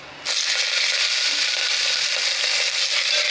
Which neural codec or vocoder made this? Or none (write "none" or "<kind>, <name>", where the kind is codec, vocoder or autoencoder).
none